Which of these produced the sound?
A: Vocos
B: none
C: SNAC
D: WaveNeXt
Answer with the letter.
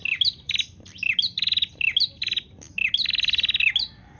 B